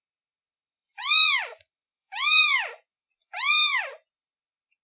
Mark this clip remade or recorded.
remade